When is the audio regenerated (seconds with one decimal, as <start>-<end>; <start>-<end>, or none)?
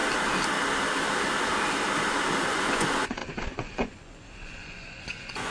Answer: 2.5-5.5